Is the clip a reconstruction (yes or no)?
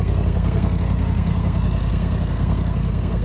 yes